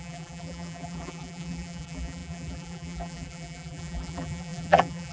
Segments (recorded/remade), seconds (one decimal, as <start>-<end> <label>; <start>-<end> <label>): 0.0-5.1 remade